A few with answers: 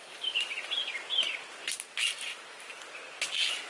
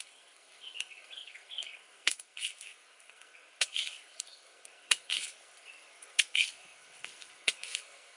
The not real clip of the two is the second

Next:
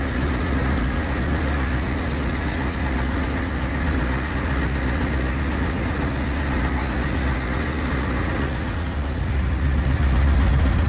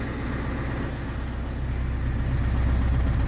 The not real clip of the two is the first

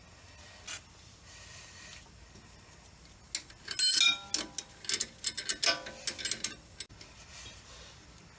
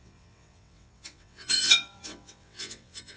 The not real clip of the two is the second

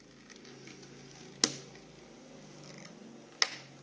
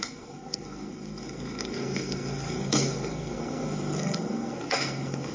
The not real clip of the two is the second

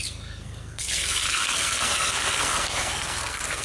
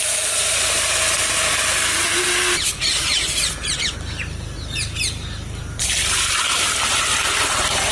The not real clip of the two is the first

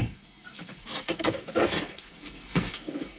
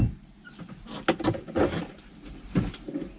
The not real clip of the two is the first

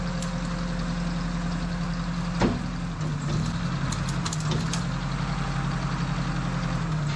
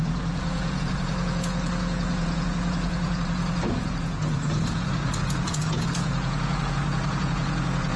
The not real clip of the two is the second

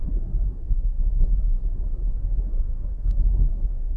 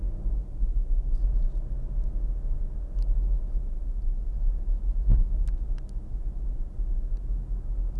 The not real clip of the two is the first